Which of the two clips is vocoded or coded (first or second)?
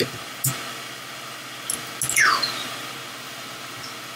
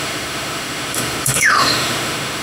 second